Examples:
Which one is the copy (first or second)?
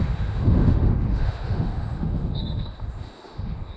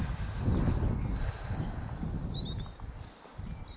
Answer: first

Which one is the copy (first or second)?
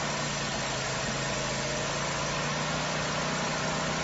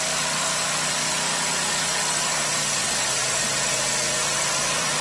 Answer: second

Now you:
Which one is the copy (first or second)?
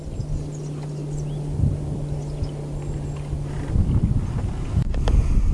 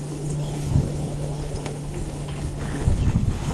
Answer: second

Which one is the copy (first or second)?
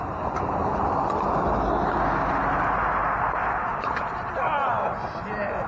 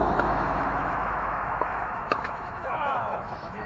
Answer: second